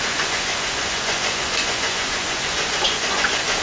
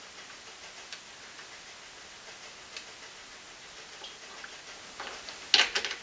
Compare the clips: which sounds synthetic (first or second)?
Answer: first